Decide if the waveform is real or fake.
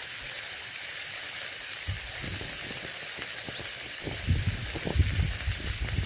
real